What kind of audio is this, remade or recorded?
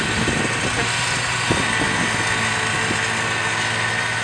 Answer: recorded